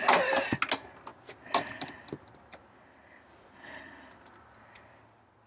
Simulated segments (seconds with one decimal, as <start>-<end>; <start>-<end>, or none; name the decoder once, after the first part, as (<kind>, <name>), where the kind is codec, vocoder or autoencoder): none